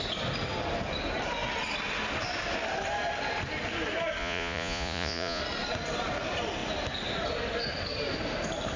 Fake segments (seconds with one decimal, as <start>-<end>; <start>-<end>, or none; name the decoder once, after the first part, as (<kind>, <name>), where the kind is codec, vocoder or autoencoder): 4.2-5.4 (vocoder, Vocos)